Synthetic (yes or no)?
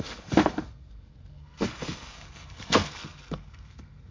yes